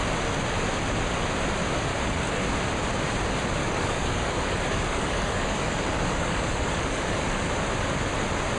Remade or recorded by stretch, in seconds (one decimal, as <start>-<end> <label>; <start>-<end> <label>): 0.0-1.9 recorded; 1.9-2.4 remade; 2.4-3.6 recorded; 3.6-7.5 remade; 7.5-8.6 recorded

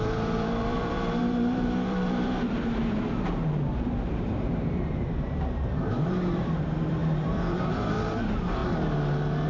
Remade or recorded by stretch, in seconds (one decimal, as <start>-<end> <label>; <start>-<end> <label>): 0.0-8.6 remade; 8.6-9.5 recorded

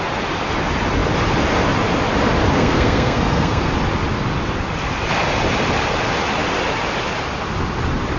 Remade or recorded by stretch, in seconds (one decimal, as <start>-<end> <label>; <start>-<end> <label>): 0.0-2.5 recorded; 2.5-3.7 remade; 3.7-8.2 recorded